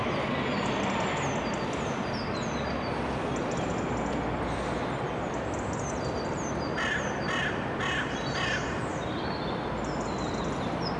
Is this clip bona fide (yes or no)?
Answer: yes